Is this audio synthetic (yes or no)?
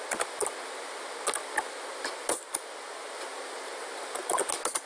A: no